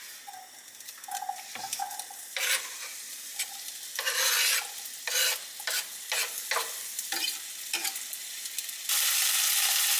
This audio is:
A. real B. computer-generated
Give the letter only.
A